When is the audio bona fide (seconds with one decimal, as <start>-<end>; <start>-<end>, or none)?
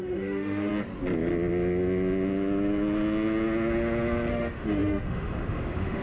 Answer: 0.7-4.3